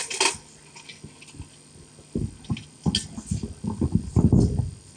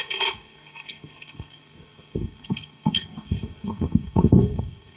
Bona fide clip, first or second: first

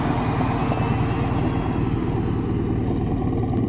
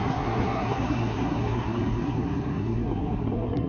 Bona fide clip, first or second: first